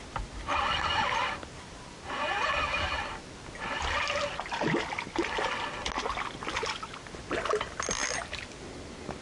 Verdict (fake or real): real